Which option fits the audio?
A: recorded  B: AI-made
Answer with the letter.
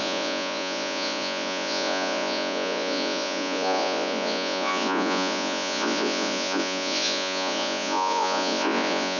B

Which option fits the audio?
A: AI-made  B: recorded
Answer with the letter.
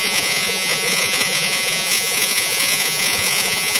A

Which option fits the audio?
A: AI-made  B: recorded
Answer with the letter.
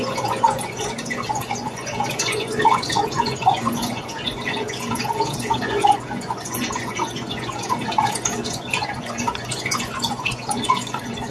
A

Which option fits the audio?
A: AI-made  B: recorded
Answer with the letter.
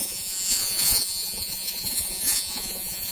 A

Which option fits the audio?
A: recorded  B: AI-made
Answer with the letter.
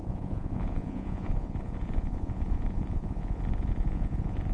B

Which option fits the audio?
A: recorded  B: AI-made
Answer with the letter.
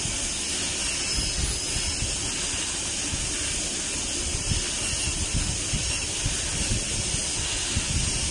A